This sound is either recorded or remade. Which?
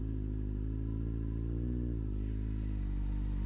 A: recorded